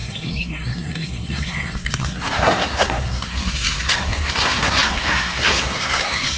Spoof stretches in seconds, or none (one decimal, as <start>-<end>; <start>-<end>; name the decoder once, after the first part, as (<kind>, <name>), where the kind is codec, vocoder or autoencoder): 0.0-6.4 (codec, SNAC)

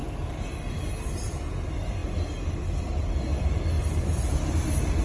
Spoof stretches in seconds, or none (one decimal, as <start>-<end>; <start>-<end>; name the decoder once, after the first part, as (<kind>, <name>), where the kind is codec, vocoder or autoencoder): none